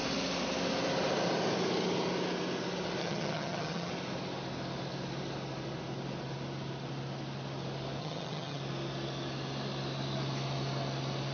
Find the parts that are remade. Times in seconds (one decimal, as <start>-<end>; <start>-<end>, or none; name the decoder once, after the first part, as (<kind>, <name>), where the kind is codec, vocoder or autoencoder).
3.0-3.9 (vocoder, HiFi-GAN); 8.0-8.6